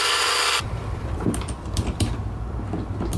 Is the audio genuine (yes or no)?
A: no